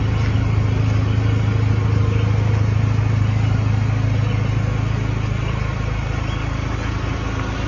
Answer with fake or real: real